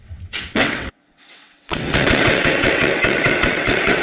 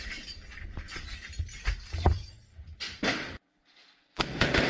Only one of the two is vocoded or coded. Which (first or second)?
first